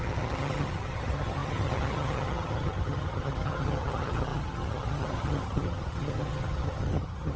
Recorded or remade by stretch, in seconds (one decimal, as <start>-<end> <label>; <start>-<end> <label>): 0.0-7.4 remade